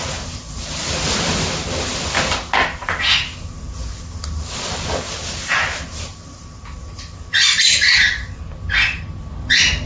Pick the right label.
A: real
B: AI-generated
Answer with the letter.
A